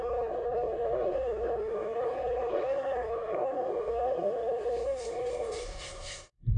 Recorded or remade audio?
remade